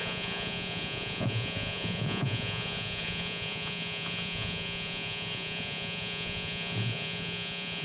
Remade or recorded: remade